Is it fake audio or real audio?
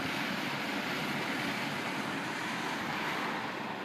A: fake